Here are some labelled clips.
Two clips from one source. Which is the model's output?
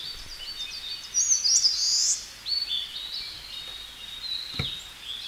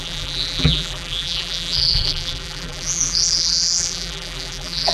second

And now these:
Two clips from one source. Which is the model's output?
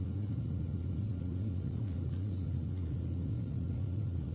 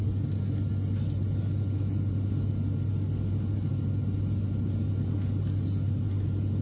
first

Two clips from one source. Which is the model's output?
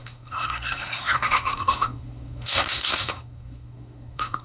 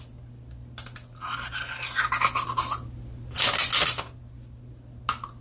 first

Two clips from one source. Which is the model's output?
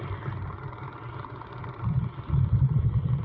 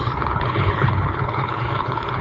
second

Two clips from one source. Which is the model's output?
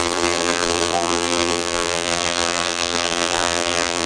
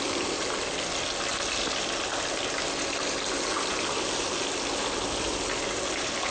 first